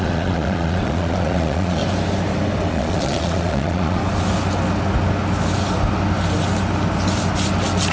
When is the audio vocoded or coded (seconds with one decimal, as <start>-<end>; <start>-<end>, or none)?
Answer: 0.0-1.8; 2.7-4.0